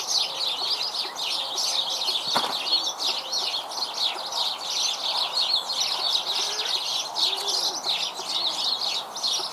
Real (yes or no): yes